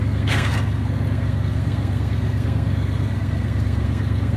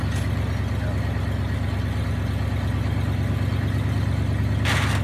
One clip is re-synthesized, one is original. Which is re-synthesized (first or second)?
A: first